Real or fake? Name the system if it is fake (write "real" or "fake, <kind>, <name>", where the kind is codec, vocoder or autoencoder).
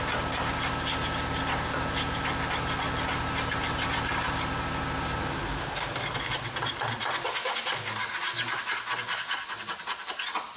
real